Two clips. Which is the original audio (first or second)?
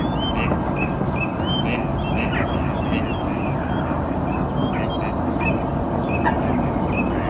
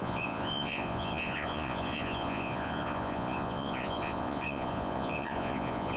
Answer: first